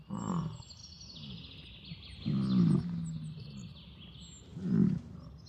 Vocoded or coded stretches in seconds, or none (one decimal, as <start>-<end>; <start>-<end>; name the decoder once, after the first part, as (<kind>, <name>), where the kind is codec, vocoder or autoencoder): none